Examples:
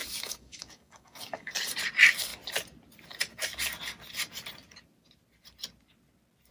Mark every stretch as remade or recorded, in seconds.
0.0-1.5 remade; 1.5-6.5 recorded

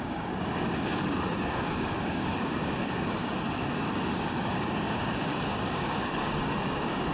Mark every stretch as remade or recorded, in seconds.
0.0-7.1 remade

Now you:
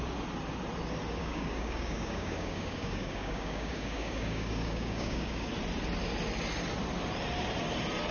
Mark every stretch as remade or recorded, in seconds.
0.0-1.2 recorded; 1.2-5.5 remade; 5.5-8.1 recorded

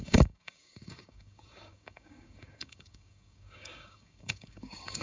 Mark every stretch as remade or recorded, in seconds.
0.0-5.0 remade

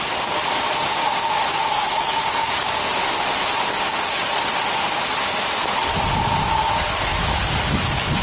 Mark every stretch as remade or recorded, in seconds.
0.0-1.0 recorded; 1.0-2.7 remade; 2.7-3.7 recorded; 3.7-4.3 remade; 4.3-8.2 recorded

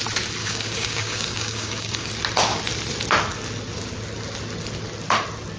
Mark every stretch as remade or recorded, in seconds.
0.0-0.4 recorded; 0.4-2.1 remade; 2.1-5.6 recorded

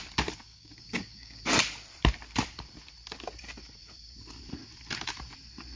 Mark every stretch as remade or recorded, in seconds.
0.0-0.5 recorded; 0.5-1.4 remade; 1.4-5.8 recorded

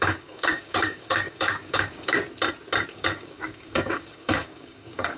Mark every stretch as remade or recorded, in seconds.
0.0-2.2 remade; 2.2-2.9 recorded; 2.9-5.2 remade